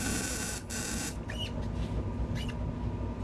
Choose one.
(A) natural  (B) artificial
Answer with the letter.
A